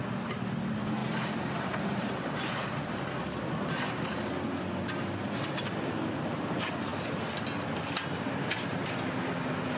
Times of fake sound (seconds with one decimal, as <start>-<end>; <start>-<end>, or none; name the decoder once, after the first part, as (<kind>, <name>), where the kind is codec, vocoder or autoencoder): 1.0-3.0 (vocoder, BigVGAN v2)